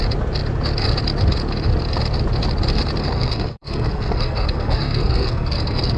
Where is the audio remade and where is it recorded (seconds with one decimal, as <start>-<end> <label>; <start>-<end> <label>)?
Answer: 0.0-3.0 recorded; 3.0-6.0 remade